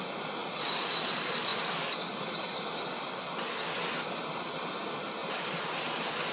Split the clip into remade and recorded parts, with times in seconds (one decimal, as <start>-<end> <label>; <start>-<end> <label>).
0.0-6.3 recorded